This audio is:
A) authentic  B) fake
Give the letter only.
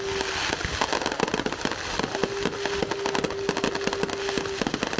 A